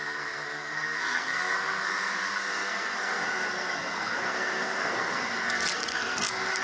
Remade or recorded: remade